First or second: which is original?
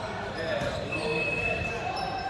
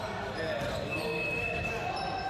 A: second